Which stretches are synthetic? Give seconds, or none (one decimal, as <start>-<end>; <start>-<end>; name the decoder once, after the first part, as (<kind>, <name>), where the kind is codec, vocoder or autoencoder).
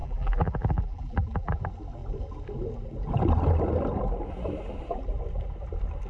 0.0-1.6 (vocoder, BigVGAN v2)